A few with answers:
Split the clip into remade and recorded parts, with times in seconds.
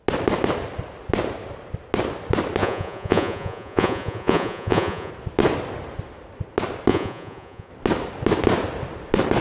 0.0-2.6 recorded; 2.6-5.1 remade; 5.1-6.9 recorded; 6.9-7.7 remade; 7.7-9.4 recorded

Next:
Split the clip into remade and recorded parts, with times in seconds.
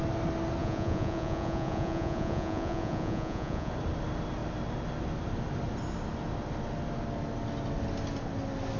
0.0-0.6 recorded; 0.6-3.7 remade; 3.7-8.8 recorded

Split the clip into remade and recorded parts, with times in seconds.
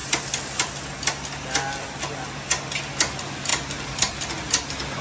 0.0-5.0 recorded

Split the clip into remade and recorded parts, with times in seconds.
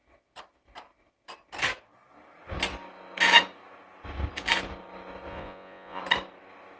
0.0-5.3 recorded; 5.3-6.0 remade; 6.0-6.8 recorded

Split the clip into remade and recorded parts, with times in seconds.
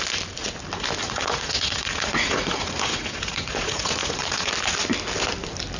0.0-1.0 recorded; 1.0-4.5 remade; 4.5-5.8 recorded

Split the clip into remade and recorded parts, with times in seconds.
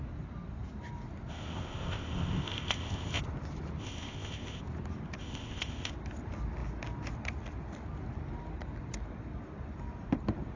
0.0-1.3 recorded; 1.3-3.2 remade; 3.2-3.8 recorded; 3.8-4.6 remade; 4.6-5.2 recorded; 5.2-5.9 remade; 5.9-10.6 recorded